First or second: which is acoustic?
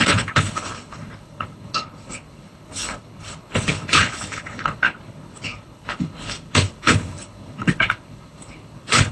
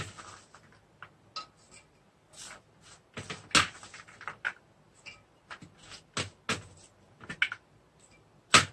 second